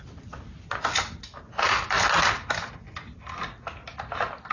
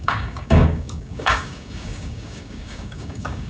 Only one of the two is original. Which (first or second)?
first